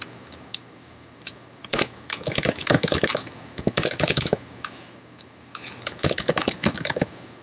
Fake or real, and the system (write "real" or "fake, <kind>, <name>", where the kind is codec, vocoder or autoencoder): fake, autoencoder, DAC-VAE